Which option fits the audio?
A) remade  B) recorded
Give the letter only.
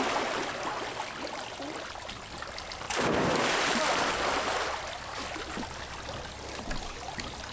B